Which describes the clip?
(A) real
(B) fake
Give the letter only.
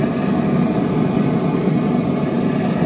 A